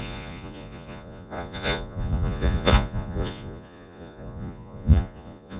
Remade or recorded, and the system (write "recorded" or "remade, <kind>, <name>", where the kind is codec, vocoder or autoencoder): remade, vocoder, Vocos